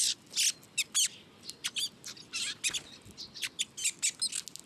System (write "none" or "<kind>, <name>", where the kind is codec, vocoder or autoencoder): none